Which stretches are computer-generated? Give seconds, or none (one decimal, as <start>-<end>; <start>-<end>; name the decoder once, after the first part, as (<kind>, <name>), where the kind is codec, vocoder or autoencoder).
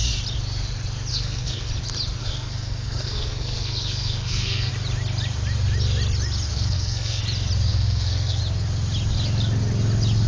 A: 1.1-1.7 (codec, SNAC); 2.2-4.7; 6.5-7.2; 7.7-8.4